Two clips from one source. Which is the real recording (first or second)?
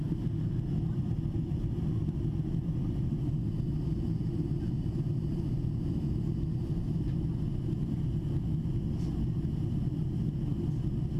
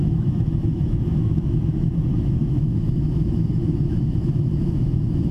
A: first